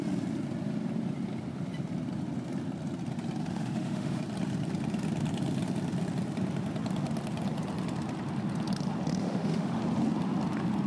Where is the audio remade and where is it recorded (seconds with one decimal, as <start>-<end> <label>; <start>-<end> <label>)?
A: 0.0-3.4 recorded; 3.4-4.2 remade; 4.2-9.2 recorded; 9.2-9.8 remade; 9.8-10.9 recorded